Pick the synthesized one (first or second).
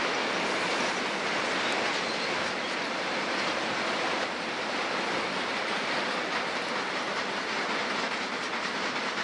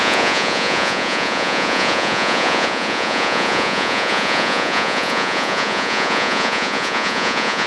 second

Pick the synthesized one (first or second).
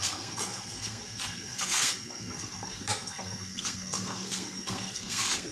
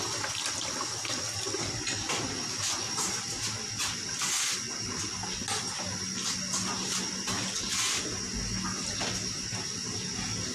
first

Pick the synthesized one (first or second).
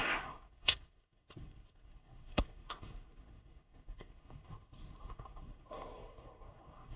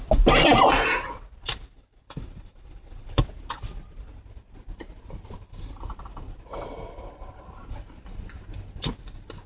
first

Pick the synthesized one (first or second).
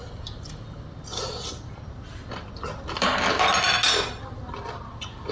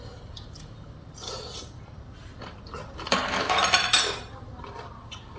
second